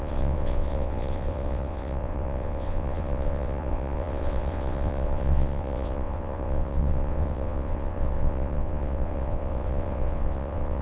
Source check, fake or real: fake